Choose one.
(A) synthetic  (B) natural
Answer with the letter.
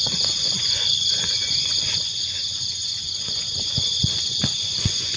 A